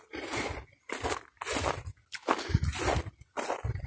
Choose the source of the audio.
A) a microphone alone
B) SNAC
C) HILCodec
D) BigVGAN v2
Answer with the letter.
A